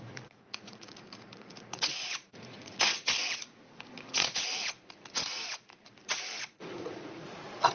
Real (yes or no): no